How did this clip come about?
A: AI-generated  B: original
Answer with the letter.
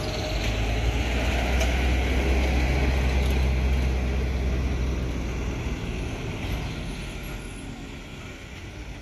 B